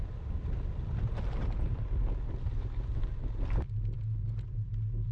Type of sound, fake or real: real